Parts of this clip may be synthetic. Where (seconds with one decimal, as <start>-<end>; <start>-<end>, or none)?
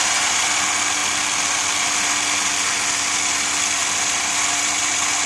none